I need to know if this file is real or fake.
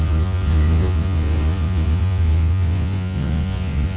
fake